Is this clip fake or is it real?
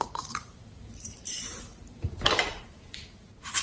fake